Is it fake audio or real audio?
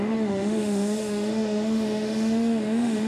fake